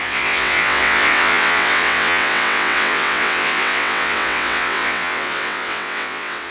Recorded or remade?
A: remade